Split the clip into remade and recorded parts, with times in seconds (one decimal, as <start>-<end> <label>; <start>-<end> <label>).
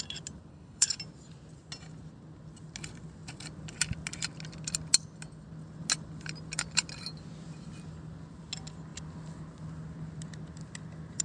0.0-0.5 recorded; 0.5-1.0 remade; 1.0-11.2 recorded